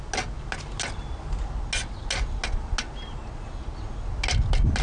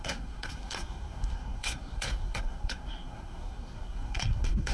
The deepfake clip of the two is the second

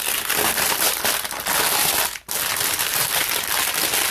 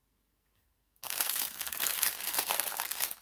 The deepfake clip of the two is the second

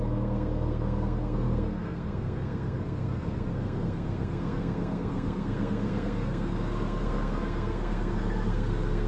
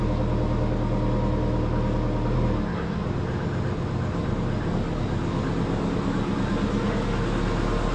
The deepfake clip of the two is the first